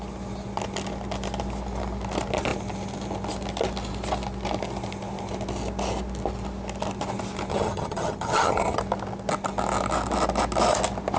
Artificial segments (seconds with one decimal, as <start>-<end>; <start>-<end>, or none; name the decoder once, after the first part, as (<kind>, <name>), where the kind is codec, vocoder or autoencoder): 7.5-8.8 (vocoder, HiFi-GAN)